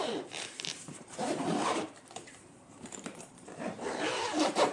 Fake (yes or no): yes